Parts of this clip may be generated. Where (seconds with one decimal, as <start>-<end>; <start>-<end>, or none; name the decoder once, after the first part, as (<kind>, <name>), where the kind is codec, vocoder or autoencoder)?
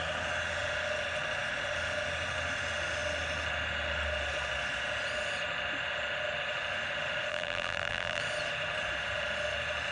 7.3-8.2 (vocoder, BigVGAN v2)